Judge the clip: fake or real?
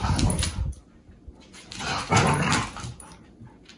real